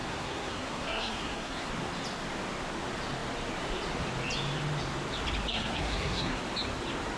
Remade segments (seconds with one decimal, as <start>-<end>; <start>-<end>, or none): 0.0-1.7; 5.5-6.4